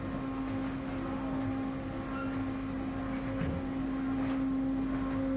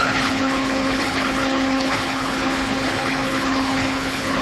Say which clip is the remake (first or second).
second